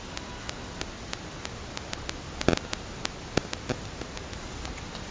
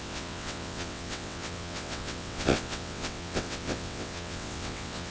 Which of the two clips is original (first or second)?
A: first